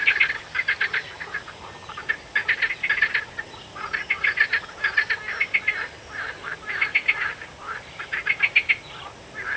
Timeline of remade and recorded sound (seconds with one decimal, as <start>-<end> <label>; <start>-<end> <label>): 0.0-9.6 recorded